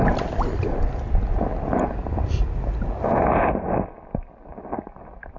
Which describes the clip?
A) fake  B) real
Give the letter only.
B